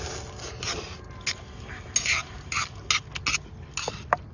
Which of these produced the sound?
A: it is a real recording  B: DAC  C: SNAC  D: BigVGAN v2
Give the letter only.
A